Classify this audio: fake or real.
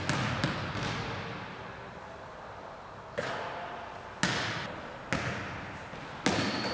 real